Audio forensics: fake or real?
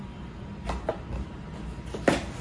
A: real